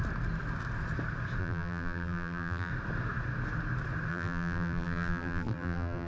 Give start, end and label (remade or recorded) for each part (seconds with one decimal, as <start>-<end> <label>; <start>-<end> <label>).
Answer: 0.0-1.4 recorded; 1.4-2.7 remade; 2.7-4.1 recorded; 4.1-6.1 remade